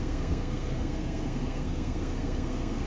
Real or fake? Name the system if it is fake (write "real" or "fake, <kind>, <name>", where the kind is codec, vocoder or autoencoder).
fake, codec, SNAC